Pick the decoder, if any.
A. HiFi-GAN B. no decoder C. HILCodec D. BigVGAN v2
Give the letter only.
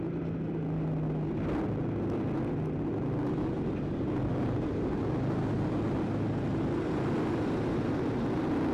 B